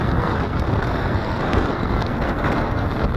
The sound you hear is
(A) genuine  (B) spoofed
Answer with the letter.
B